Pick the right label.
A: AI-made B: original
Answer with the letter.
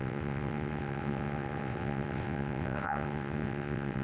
A